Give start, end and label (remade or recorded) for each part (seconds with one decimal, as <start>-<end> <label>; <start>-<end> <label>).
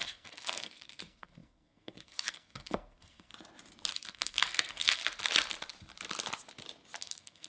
0.0-3.3 remade; 3.3-3.9 recorded; 3.9-5.0 remade; 5.0-7.0 recorded; 7.0-7.5 remade